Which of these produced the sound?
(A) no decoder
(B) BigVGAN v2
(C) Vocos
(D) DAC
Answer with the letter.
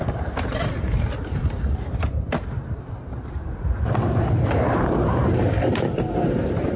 B